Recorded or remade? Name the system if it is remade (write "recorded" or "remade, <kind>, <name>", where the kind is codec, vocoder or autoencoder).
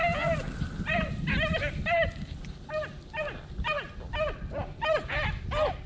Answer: recorded